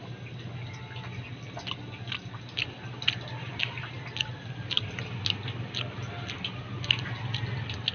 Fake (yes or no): no